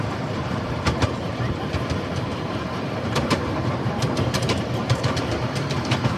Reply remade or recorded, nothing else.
remade